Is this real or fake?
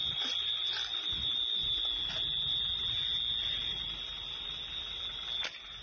real